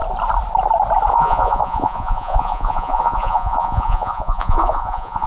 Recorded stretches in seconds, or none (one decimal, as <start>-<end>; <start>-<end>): 0.0-1.1